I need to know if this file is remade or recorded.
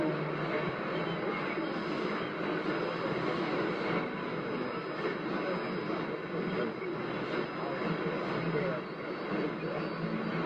recorded